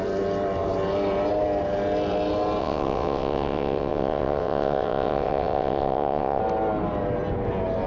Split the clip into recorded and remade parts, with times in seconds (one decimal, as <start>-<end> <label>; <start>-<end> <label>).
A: 0.0-2.6 recorded; 2.6-6.4 remade; 6.4-7.9 recorded